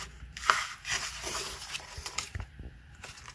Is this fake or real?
real